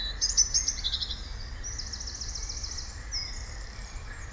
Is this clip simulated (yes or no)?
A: no